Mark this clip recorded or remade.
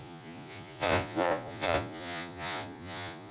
remade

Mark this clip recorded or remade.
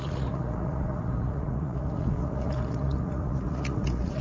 remade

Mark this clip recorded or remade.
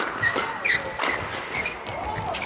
recorded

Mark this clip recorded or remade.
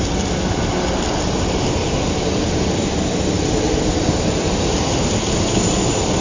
recorded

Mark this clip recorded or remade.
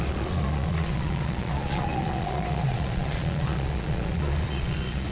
remade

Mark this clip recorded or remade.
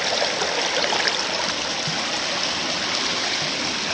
recorded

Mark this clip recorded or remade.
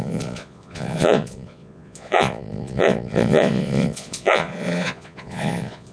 remade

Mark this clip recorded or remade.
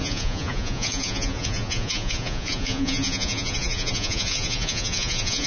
remade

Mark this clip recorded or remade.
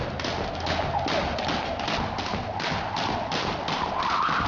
recorded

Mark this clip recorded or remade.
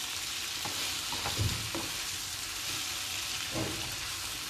recorded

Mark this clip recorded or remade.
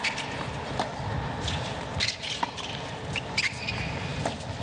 recorded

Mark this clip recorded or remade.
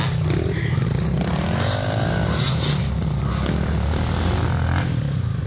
recorded